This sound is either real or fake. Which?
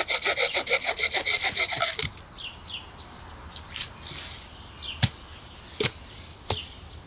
real